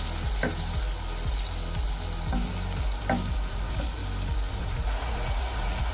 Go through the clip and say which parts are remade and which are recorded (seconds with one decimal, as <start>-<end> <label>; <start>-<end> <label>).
0.0-3.5 recorded; 3.5-4.0 remade; 4.0-4.5 recorded; 4.5-5.9 remade

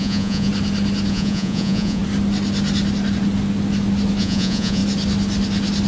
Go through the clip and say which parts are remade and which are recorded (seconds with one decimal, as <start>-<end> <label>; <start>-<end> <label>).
0.0-0.5 remade; 0.5-1.1 recorded; 1.1-2.0 remade; 2.0-4.2 recorded; 4.2-4.8 remade; 4.8-5.9 recorded

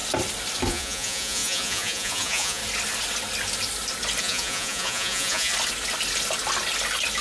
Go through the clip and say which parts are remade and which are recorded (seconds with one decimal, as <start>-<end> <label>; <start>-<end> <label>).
0.0-0.7 recorded; 0.7-2.6 remade; 2.6-4.2 recorded; 4.2-5.5 remade; 5.5-7.2 recorded

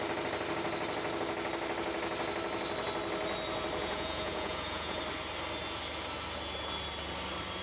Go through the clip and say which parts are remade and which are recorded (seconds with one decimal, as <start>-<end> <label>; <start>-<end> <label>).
0.0-3.8 recorded; 3.8-5.0 remade; 5.0-7.6 recorded

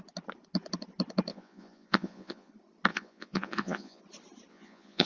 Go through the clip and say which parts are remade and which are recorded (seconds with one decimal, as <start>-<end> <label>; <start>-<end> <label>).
0.0-1.3 recorded; 1.3-2.5 remade; 2.5-2.9 recorded; 2.9-4.0 remade; 4.0-4.5 recorded; 4.5-5.1 remade

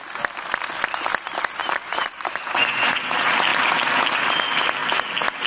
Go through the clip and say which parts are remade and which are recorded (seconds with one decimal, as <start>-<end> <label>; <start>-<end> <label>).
0.0-1.6 recorded; 1.6-3.1 remade; 3.1-5.5 recorded